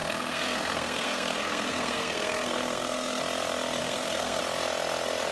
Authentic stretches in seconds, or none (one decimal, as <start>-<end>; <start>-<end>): 3.2-3.8; 4.4-5.3